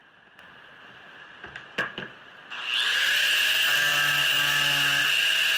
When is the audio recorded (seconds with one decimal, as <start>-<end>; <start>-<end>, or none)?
0.0-5.6